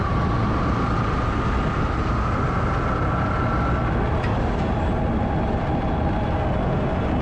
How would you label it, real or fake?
real